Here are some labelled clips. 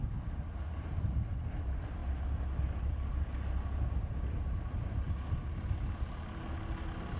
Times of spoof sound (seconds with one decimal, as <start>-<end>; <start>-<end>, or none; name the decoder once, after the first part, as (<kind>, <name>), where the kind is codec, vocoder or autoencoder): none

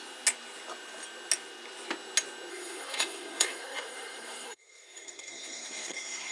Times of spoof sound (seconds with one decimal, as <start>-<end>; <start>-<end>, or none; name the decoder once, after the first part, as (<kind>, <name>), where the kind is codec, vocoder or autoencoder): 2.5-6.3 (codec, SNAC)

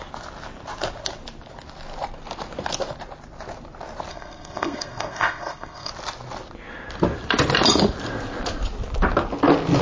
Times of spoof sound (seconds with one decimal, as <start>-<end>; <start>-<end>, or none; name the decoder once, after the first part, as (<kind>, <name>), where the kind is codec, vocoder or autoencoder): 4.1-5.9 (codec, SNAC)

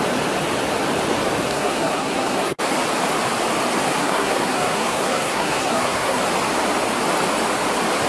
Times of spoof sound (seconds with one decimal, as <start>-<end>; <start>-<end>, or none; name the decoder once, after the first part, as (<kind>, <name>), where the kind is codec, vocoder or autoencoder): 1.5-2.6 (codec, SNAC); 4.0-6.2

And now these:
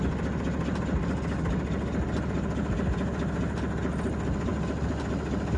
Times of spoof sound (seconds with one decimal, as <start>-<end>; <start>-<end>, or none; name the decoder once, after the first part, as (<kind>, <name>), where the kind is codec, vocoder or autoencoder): none